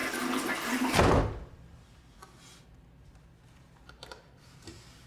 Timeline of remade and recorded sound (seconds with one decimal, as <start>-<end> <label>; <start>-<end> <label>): 0.0-2.6 recorded; 2.6-5.1 remade